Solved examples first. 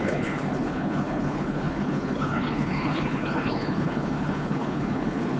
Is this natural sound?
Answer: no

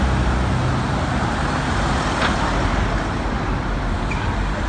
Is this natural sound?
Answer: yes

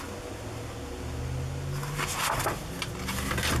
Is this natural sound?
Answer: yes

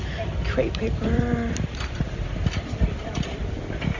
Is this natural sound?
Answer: no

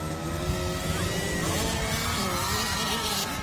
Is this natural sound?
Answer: yes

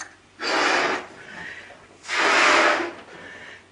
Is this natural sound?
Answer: yes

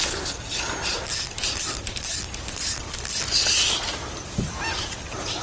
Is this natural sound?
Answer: yes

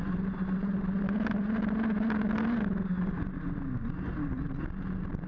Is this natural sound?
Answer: yes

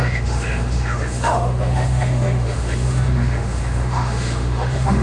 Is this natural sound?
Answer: no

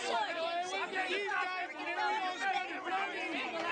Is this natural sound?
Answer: yes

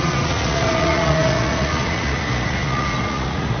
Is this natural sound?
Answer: no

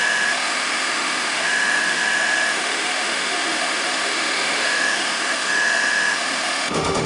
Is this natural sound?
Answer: no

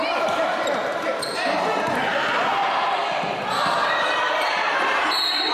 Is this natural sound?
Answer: no